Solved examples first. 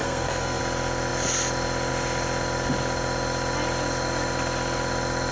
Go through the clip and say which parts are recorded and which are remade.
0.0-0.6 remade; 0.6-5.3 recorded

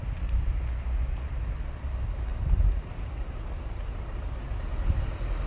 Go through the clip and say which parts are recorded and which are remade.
0.0-5.5 recorded

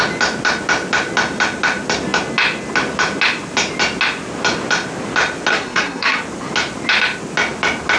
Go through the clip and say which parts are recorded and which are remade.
0.0-5.5 recorded; 5.5-6.2 remade; 6.2-8.0 recorded

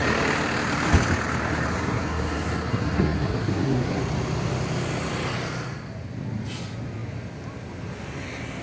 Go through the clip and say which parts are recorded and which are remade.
0.0-1.7 recorded; 1.7-4.0 remade; 4.0-8.6 recorded

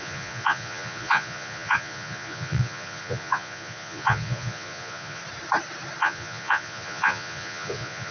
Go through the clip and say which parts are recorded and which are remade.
0.0-5.2 remade; 5.2-6.0 recorded; 6.0-8.1 remade